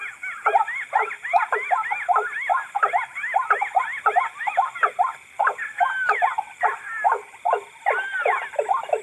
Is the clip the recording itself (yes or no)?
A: yes